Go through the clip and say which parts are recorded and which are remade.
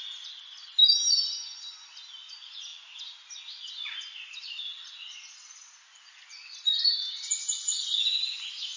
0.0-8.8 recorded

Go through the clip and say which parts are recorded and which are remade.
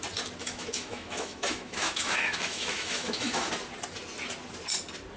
0.0-0.4 recorded; 0.4-3.5 remade; 3.5-5.2 recorded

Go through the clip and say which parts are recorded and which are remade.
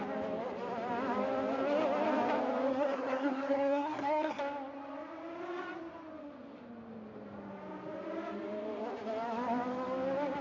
0.0-2.7 recorded; 2.7-4.4 remade; 4.4-10.4 recorded